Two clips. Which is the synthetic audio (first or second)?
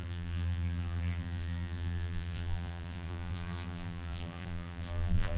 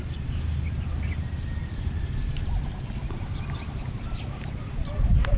first